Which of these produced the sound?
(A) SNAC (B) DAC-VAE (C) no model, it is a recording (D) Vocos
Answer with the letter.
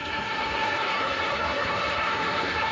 A